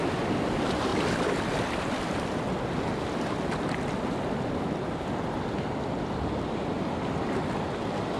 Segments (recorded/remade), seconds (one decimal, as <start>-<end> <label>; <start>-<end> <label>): 0.0-8.2 recorded